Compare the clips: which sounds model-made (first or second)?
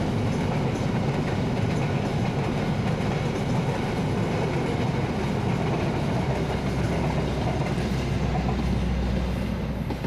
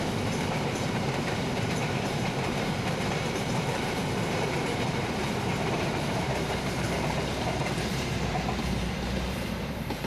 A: second